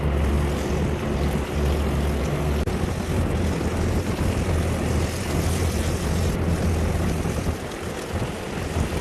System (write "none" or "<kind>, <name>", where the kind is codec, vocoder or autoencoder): none